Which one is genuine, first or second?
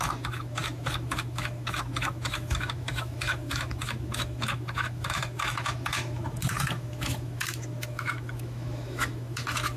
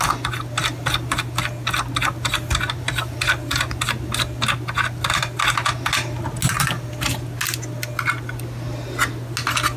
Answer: second